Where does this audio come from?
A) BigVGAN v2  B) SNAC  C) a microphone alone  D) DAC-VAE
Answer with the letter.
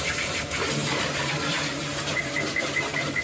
A